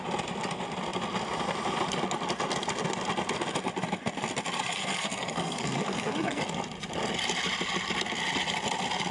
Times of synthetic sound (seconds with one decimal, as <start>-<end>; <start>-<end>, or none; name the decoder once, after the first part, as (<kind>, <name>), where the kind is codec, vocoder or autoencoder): 4.8-6.4 (codec, SNAC)